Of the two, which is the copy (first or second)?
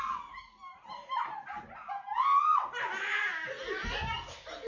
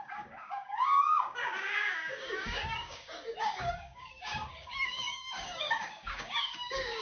second